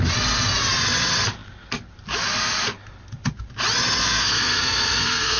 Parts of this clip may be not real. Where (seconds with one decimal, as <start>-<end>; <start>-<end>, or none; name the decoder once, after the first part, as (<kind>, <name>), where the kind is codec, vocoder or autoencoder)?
4.0-5.4 (codec, SNAC)